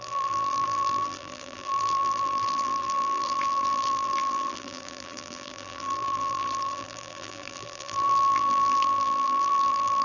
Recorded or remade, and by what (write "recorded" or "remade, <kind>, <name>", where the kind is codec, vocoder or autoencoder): remade, vocoder, BigVGAN v2